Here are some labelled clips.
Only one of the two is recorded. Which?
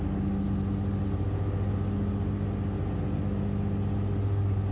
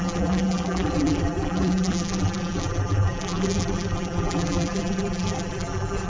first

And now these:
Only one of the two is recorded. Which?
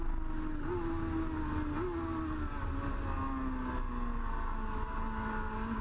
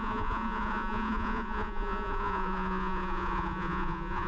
first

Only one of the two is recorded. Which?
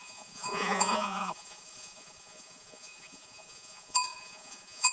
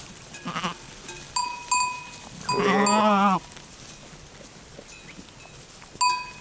second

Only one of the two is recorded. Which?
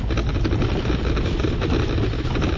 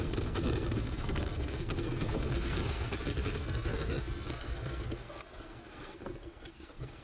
first